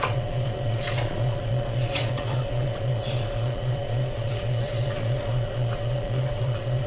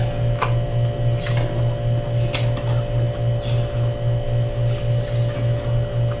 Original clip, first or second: second